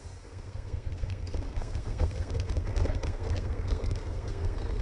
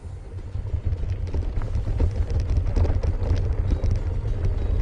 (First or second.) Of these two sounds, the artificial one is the first